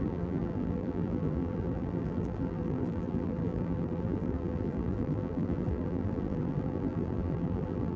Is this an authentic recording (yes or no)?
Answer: no